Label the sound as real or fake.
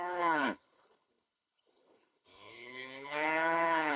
fake